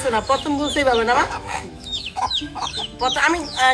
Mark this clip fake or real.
fake